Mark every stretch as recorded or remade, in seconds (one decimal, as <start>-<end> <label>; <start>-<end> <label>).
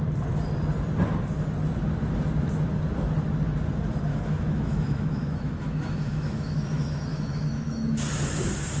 0.0-4.1 recorded; 4.1-8.0 remade; 8.0-8.8 recorded